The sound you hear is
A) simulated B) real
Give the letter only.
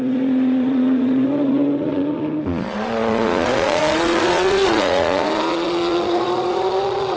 A